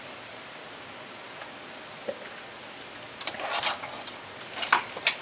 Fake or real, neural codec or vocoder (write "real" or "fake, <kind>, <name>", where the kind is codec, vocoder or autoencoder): real